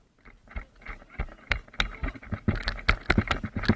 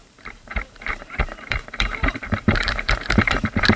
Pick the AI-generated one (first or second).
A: second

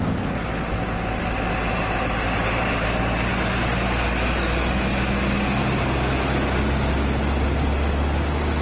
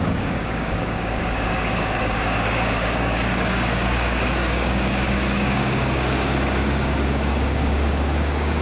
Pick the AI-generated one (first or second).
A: second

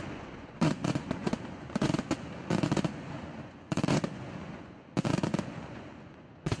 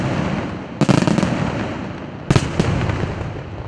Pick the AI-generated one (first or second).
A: first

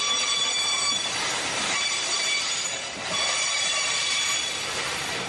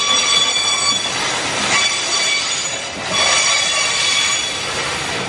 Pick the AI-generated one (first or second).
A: first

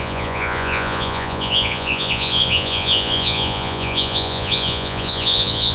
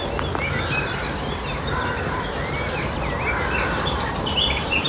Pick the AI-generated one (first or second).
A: first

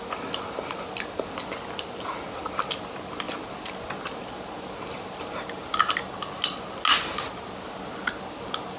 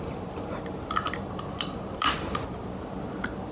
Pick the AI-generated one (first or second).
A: second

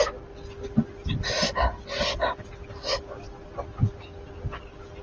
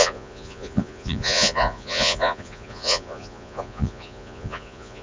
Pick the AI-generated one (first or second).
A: second